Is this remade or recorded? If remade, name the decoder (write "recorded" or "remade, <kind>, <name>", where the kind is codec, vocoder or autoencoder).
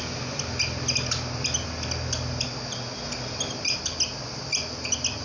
recorded